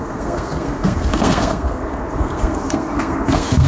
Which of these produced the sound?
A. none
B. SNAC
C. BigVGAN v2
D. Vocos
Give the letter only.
B